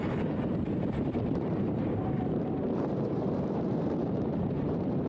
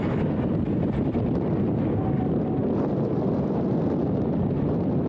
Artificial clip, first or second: first